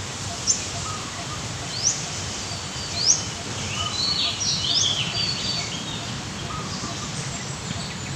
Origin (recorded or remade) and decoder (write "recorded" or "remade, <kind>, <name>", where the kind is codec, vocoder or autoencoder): recorded